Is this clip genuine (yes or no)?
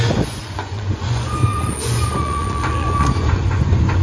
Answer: no